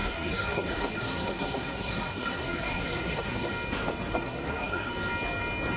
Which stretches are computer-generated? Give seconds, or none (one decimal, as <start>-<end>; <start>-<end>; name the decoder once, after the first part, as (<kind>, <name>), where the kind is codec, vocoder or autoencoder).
0.0-3.5 (codec, SNAC); 4.1-4.9